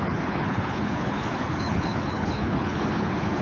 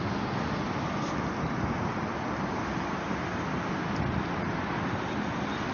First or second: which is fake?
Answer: first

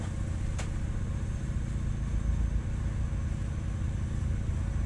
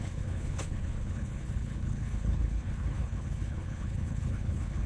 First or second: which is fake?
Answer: second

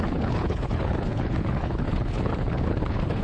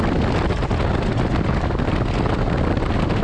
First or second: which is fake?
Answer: first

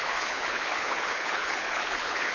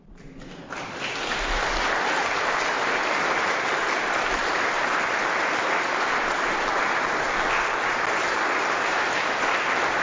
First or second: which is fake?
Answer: first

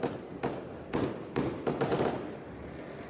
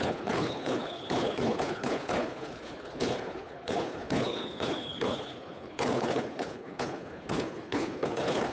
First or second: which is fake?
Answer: second